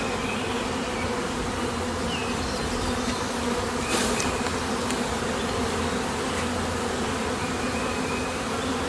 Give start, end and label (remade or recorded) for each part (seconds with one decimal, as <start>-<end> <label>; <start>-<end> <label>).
0.0-8.9 recorded